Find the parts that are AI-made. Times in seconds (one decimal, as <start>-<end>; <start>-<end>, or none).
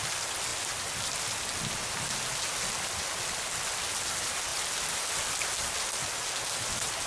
none